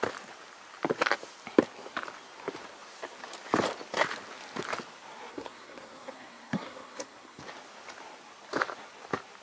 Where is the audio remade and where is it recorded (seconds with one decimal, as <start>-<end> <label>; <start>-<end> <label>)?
0.0-5.3 recorded; 5.3-7.4 remade; 7.4-9.4 recorded